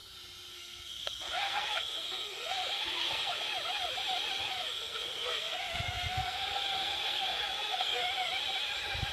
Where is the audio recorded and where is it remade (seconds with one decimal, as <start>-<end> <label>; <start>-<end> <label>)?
0.0-0.5 recorded; 0.5-3.5 remade; 3.5-4.4 recorded; 4.4-8.0 remade; 8.0-9.1 recorded